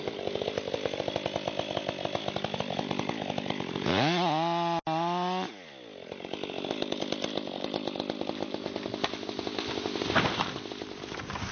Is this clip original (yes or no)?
yes